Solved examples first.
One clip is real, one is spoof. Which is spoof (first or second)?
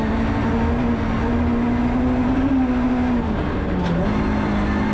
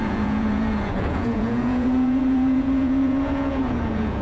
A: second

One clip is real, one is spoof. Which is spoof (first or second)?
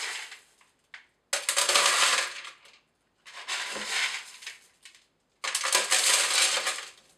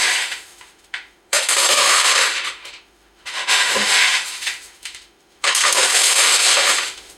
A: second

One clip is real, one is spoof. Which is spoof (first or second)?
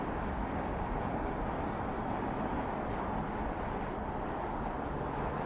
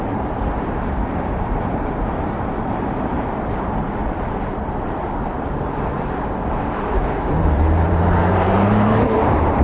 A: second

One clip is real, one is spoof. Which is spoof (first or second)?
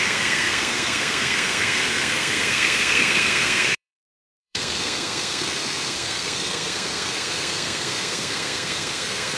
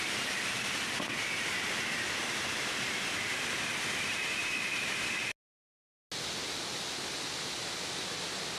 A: first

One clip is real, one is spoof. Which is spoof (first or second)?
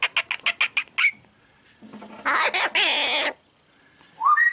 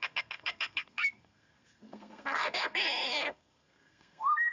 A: second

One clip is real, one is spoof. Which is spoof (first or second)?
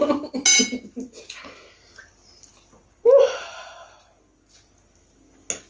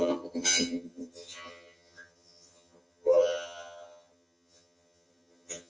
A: second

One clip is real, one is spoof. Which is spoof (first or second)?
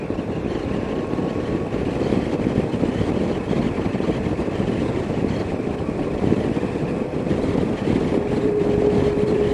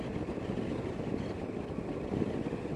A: first